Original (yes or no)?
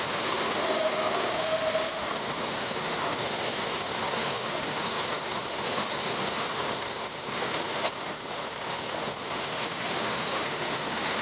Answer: no